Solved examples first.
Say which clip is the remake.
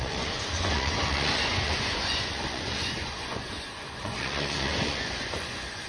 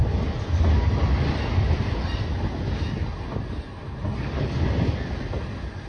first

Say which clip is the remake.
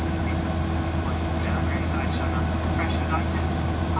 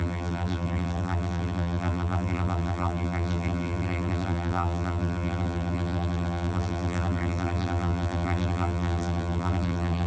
second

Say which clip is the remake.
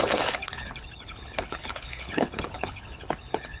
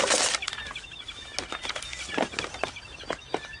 first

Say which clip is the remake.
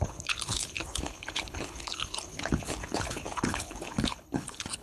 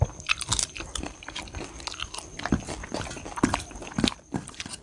first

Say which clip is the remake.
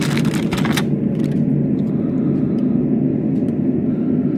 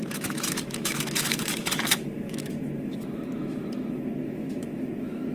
second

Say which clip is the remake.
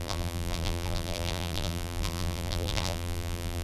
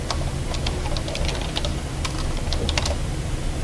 first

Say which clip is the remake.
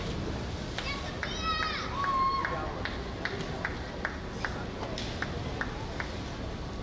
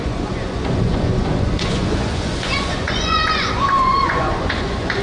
second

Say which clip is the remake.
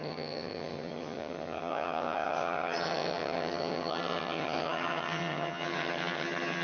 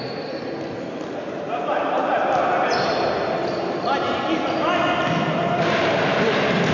first